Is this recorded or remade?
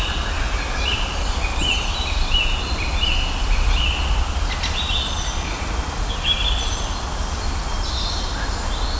recorded